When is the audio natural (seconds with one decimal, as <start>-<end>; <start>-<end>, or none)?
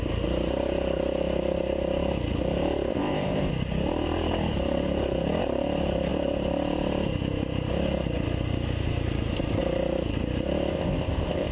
0.0-2.9; 3.5-10.7